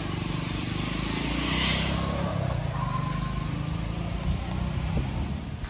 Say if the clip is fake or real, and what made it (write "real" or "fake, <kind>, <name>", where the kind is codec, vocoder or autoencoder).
real